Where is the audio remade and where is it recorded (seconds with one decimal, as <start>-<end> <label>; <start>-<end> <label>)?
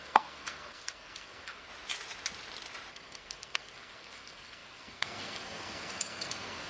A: 0.0-1.7 remade; 1.7-2.9 recorded; 2.9-6.7 remade